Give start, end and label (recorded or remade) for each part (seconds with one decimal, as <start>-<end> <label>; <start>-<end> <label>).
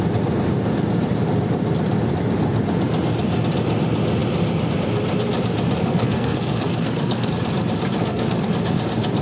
0.0-5.8 recorded; 5.8-7.3 remade; 7.3-8.0 recorded; 8.0-8.5 remade; 8.5-9.2 recorded